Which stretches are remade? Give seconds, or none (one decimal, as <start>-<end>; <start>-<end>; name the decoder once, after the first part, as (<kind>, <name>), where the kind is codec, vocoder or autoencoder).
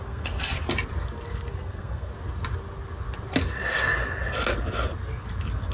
0.0-0.4 (codec, SNAC); 1.5-2.1